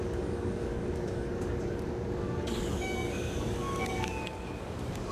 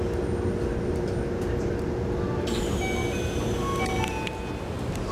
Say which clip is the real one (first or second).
second